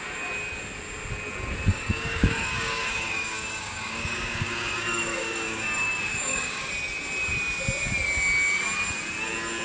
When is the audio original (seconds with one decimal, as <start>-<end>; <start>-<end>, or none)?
0.0-1.7; 6.7-9.6